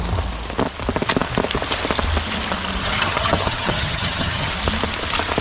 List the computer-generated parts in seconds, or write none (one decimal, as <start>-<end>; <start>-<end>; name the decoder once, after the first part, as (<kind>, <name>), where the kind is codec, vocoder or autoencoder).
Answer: 2.8-4.5 (vocoder, HiFi-GAN)